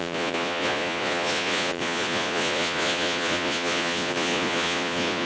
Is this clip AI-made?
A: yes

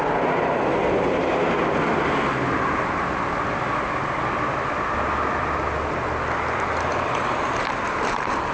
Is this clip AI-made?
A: no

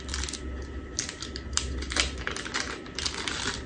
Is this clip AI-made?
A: no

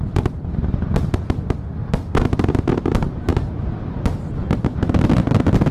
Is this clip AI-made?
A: no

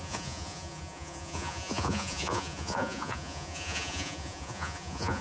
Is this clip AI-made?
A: yes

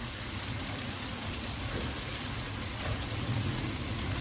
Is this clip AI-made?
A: yes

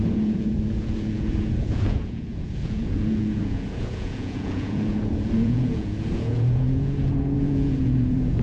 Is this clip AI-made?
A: yes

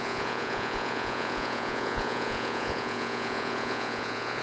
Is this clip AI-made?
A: yes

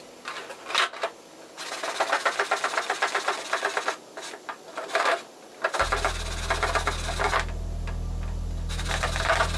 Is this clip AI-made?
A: no